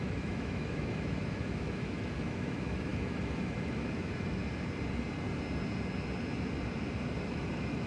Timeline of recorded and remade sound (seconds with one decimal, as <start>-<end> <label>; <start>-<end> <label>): 0.0-4.4 remade; 4.4-7.2 recorded; 7.2-7.9 remade